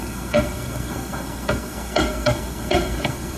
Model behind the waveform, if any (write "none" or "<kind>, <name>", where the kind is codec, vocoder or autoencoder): codec, SNAC